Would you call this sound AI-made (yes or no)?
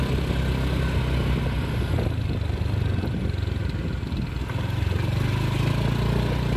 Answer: no